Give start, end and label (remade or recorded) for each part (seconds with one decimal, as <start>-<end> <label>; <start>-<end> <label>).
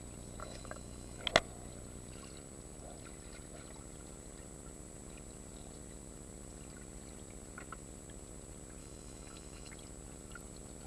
0.0-0.4 recorded; 0.4-1.2 remade; 1.2-8.8 recorded; 8.8-9.7 remade; 9.7-10.9 recorded